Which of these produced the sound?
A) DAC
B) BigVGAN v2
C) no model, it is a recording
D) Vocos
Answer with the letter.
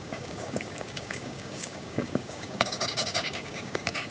A